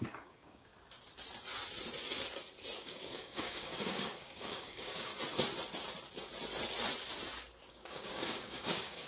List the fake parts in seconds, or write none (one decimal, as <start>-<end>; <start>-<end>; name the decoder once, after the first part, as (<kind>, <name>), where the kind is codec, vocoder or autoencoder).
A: 0.0-0.7 (codec, DAC); 2.8-5.1; 7.7-9.1